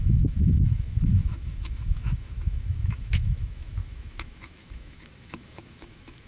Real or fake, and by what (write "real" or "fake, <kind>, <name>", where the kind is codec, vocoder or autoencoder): fake, autoencoder, DAC-VAE